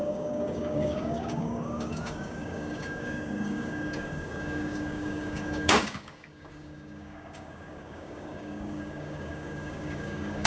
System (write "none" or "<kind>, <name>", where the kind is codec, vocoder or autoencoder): codec, DAC